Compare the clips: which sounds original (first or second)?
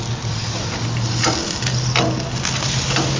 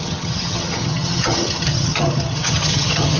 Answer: first